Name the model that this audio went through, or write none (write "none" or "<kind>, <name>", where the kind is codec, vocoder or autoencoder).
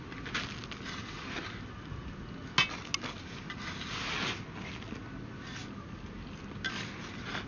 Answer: none